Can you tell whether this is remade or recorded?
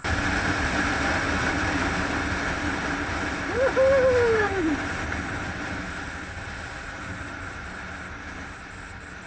recorded